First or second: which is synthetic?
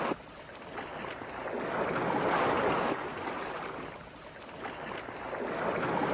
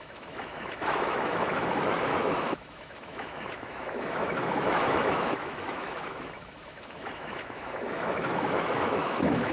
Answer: second